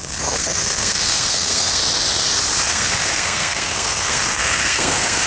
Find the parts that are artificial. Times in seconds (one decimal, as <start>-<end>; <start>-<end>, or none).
0.0-1.8; 2.7-5.3